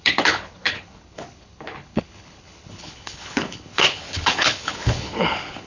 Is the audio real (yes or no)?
no